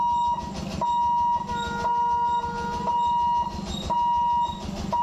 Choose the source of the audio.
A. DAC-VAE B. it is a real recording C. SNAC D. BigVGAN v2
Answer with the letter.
B